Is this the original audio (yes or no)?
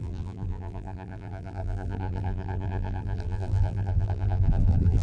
no